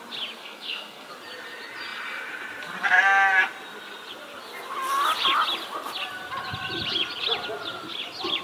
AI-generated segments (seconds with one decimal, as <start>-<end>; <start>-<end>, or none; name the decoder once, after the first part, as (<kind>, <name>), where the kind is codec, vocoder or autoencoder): 0.4-1.1 (codec, SNAC)